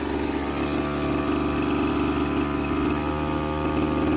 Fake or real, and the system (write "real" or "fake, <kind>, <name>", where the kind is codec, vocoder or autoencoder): real